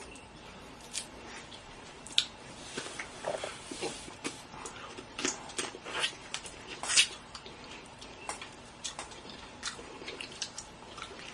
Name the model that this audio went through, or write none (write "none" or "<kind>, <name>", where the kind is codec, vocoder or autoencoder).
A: vocoder, BigVGAN v2